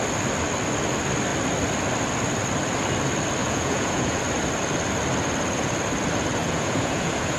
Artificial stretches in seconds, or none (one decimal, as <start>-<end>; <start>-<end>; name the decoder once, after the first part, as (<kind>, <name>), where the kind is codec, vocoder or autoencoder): 3.4-4.2 (vocoder, Vocos); 6.4-7.4